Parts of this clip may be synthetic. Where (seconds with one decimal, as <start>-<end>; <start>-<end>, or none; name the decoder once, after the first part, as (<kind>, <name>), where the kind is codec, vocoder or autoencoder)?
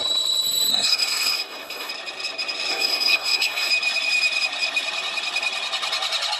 0.7-1.9 (codec, SNAC); 2.7-3.7